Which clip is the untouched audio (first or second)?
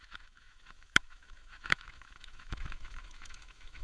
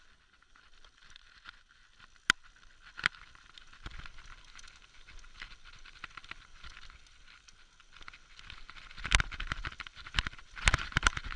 second